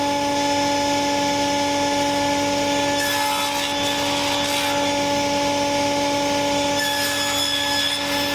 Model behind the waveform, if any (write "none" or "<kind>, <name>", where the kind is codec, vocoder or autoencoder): none